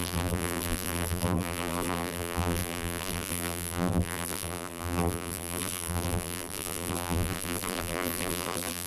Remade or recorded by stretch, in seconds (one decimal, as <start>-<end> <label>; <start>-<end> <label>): 0.0-8.9 remade